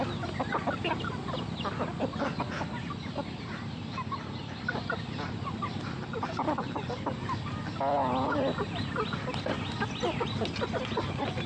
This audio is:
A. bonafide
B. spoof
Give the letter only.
A